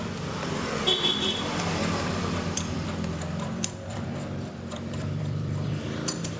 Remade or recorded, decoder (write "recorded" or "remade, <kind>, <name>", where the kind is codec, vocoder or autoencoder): remade, vocoder, BigVGAN v2